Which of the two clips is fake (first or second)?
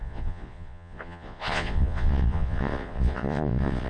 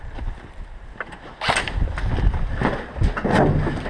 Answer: first